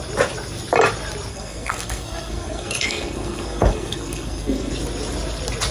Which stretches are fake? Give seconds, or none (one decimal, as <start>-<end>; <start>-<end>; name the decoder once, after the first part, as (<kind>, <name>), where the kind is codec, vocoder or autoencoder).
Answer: 1.3-4.7 (codec, SNAC)